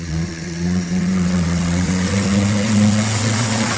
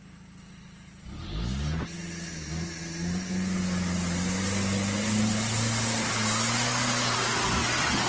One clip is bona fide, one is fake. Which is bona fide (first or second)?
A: second